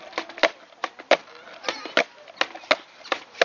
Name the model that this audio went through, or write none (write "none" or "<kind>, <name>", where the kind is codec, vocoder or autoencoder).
none